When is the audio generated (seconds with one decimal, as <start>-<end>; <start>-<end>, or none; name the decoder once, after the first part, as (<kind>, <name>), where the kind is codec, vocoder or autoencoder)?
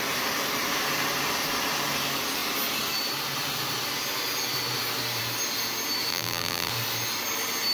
6.1-6.7 (vocoder, BigVGAN v2)